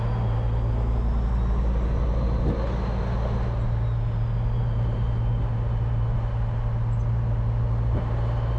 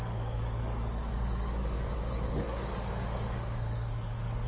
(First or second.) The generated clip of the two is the second